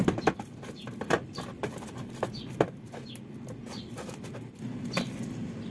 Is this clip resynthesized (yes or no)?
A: no